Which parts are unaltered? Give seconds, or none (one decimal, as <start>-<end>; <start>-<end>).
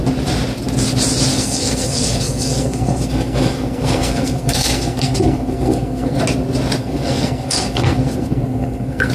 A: 0.0-1.3; 6.2-6.8